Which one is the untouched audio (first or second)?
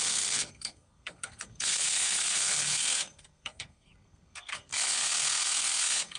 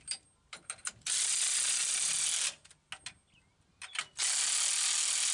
second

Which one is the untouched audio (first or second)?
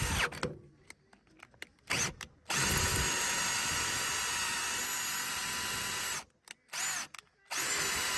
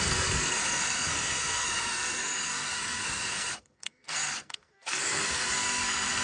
first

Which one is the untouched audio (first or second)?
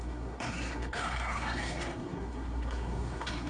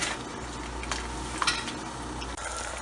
second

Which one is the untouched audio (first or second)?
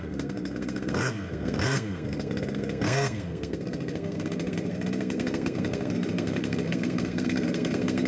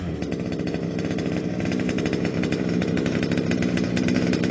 second